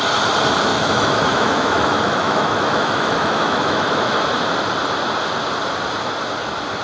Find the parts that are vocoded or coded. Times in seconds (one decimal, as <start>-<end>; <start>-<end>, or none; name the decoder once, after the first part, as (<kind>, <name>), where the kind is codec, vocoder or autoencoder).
0.7-4.1 (autoencoder, DAC-VAE)